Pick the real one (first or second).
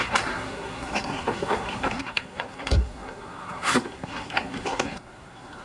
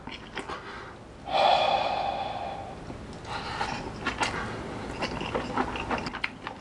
second